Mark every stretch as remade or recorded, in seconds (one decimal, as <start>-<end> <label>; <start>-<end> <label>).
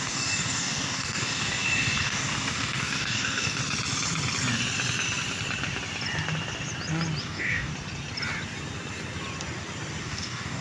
0.0-3.6 remade; 3.6-7.2 recorded; 7.2-7.7 remade; 7.7-10.0 recorded; 10.0-10.6 remade